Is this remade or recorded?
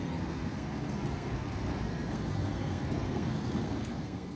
remade